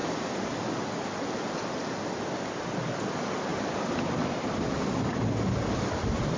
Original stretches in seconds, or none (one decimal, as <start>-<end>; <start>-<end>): 0.0-6.4